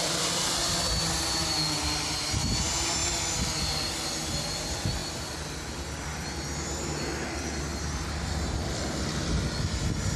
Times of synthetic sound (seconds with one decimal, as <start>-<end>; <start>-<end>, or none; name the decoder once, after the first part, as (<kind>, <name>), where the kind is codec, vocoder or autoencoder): none